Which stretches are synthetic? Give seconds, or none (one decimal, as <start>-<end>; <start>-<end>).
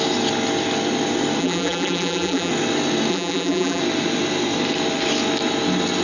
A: 1.4-2.5; 3.1-3.8